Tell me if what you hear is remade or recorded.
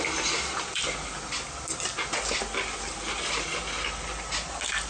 recorded